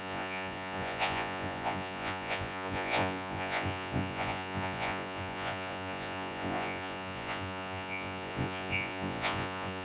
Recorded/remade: remade